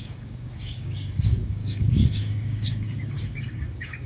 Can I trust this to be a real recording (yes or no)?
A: no